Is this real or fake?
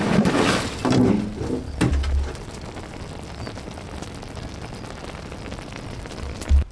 real